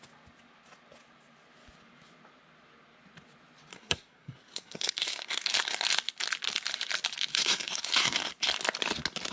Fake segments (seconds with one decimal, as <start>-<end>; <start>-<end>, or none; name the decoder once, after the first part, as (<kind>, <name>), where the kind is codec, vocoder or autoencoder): 3.7-5.5 (codec, SNAC); 7.3-8.3